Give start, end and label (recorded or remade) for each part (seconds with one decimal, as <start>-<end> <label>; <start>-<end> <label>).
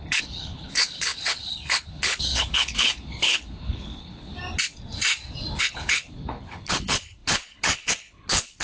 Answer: 0.0-4.3 remade; 4.3-5.6 recorded; 5.6-8.6 remade